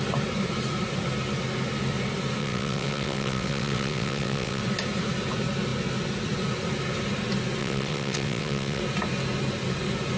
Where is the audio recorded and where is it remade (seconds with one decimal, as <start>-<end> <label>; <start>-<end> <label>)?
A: 0.0-2.4 recorded; 2.4-4.6 remade; 4.6-7.6 recorded; 7.6-8.8 remade; 8.8-10.2 recorded